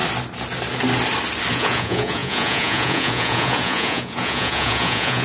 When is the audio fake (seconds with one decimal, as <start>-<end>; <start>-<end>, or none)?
1.5-5.2